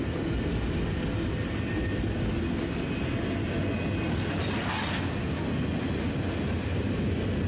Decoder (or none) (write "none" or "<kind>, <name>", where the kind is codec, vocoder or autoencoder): none